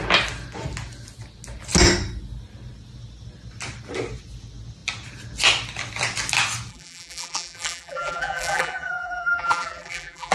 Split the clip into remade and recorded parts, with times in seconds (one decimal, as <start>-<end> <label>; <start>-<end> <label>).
0.0-6.7 recorded; 6.7-10.3 remade